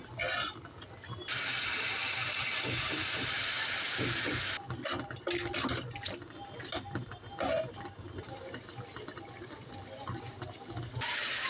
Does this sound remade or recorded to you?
recorded